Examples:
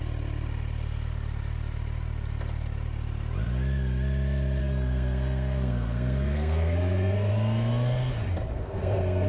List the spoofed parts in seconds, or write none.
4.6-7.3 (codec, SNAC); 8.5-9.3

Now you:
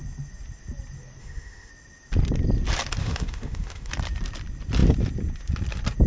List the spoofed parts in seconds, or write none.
1.2-1.7 (autoencoder, DAC-VAE); 3.0-3.9